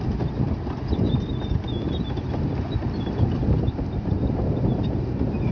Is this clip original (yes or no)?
no